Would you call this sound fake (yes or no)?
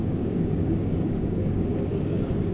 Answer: yes